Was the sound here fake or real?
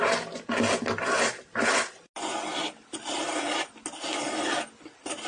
real